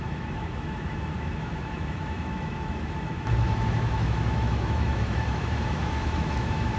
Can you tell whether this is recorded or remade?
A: remade